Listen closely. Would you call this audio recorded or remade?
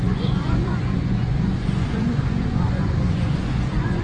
remade